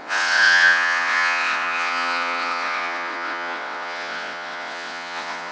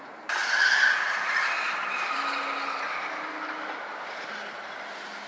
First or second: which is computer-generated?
first